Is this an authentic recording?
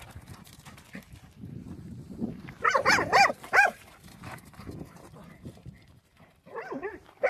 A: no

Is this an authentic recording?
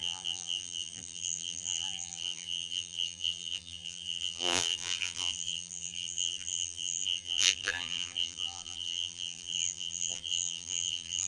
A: no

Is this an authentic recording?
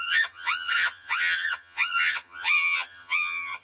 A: no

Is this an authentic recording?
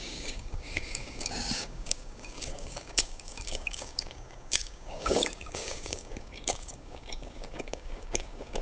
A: no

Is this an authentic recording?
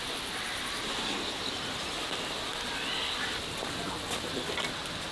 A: yes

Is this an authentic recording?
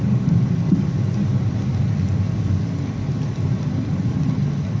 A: yes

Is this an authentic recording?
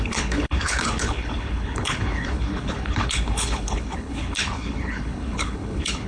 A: no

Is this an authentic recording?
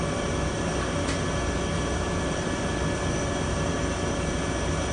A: yes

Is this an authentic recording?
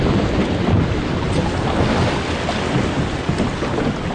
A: yes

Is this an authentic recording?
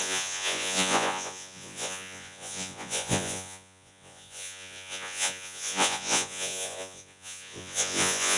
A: no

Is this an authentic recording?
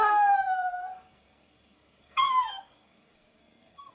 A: no